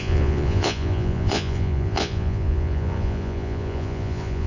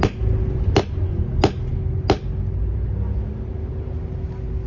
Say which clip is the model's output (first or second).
first